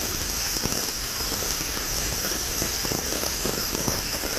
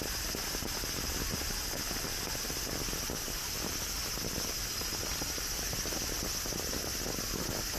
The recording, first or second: second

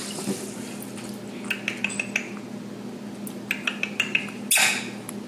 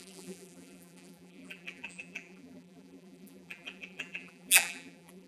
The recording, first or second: first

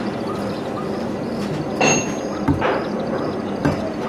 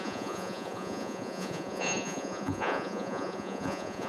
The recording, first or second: first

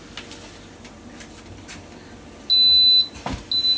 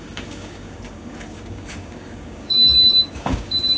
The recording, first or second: first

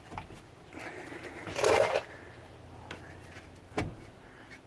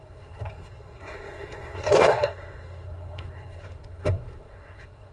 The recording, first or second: first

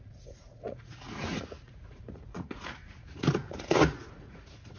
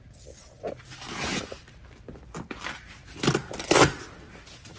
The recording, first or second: second